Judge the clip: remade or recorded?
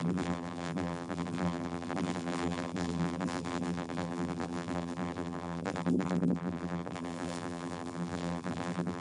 remade